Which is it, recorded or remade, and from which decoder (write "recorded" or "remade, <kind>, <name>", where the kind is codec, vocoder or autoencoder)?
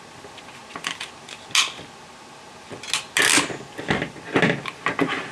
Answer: recorded